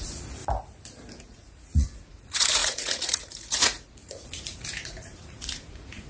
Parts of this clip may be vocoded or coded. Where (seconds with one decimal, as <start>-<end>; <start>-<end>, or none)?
0.0-0.4; 1.2-6.1